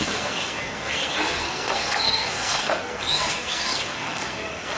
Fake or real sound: fake